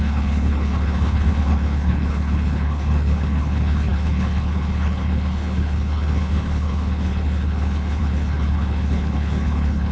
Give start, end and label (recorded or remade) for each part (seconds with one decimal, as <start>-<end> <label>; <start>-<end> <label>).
0.0-9.9 remade